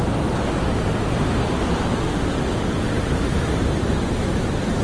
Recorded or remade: recorded